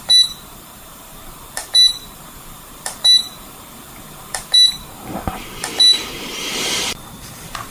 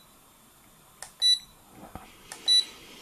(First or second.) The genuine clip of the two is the second